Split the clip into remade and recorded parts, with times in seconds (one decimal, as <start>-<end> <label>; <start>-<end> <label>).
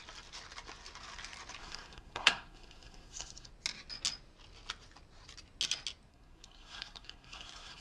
0.0-1.6 recorded; 1.6-3.5 remade; 3.5-6.1 recorded; 6.1-7.8 remade